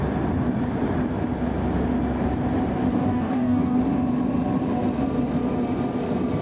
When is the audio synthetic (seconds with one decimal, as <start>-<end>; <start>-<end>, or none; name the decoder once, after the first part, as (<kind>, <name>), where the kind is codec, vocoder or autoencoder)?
2.9-3.8 (codec, DAC)

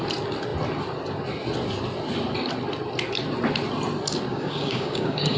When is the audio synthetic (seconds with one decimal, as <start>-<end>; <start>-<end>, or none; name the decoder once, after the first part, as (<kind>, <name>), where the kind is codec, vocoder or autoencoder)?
4.3-5.4 (codec, DAC)

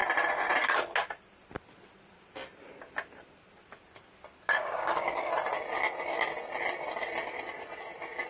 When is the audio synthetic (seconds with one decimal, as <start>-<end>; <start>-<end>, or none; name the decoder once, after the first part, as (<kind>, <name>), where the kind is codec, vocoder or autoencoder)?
4.6-5.3 (codec, DAC)

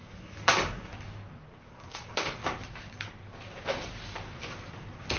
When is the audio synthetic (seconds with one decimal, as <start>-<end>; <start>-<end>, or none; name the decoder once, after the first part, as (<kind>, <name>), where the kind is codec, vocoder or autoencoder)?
0.0-0.9 (codec, DAC); 1.6-2.4

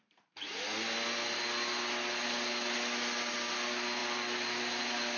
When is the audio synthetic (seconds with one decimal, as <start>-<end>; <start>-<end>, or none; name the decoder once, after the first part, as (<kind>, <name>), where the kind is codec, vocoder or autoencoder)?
none